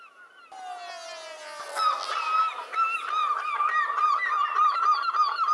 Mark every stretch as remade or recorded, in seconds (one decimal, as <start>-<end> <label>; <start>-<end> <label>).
0.0-5.5 recorded